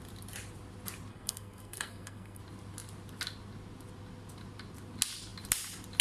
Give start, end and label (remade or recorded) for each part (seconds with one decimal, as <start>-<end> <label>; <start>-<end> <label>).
0.0-1.1 recorded; 1.1-2.4 remade; 2.4-6.0 recorded